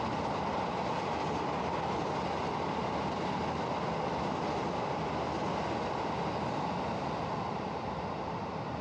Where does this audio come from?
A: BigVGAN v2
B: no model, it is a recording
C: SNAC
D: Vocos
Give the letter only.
B